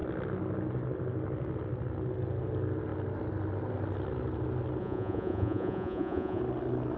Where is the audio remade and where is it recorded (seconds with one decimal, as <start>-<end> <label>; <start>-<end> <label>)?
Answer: 0.0-4.8 recorded; 4.8-6.4 remade; 6.4-7.0 recorded